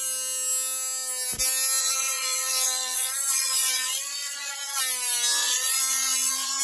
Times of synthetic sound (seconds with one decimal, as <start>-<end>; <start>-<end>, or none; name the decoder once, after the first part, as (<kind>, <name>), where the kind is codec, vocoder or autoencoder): 1.8-4.8 (vocoder, Vocos); 5.4-6.6